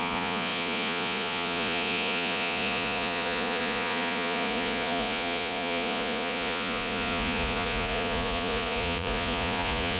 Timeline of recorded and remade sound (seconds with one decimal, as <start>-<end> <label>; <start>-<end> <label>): 0.0-10.0 remade